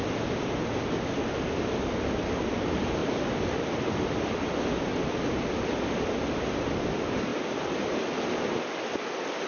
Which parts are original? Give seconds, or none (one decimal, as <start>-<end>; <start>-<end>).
0.0-9.5